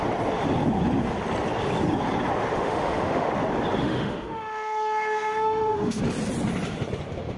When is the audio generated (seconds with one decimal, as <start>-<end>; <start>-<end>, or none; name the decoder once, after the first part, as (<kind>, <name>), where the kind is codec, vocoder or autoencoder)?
2.5-3.3 (autoencoder, DAC-VAE); 3.8-6.0